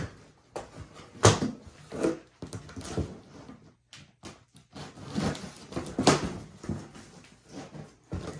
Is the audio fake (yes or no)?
no